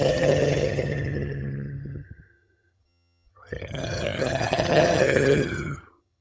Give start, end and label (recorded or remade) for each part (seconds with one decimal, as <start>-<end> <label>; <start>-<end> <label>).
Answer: 0.0-6.2 remade